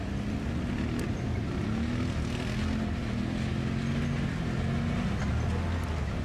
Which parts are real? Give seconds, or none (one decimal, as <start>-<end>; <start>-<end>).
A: 0.0-6.2